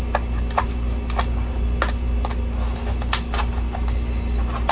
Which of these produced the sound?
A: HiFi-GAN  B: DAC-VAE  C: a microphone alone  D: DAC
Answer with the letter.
C